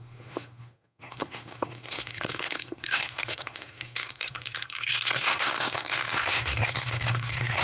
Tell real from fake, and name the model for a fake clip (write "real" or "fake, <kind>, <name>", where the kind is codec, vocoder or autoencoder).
fake, codec, SNAC